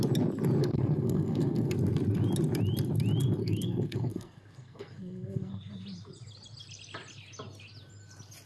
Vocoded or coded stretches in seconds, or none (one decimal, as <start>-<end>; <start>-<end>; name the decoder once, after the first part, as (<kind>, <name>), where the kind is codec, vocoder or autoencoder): 0.6-1.7 (codec, SNAC); 3.4-5.6